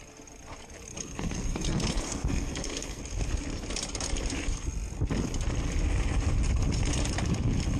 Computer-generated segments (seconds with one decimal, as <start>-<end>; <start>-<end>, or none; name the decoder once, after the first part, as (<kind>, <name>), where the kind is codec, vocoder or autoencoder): 0.9-3.0 (codec, SNAC)